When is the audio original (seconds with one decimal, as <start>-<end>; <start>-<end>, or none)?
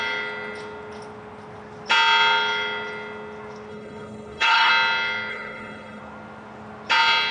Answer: 0.0-3.7; 4.7-5.3; 6.0-7.3